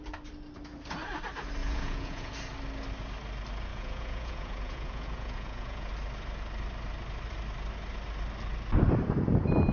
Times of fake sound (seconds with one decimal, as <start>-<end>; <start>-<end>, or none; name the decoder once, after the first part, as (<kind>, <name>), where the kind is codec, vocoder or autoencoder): 1.6-2.3 (vocoder, Vocos); 3.7-5.9